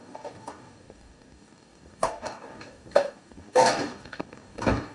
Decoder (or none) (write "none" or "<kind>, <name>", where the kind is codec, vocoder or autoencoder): codec, DAC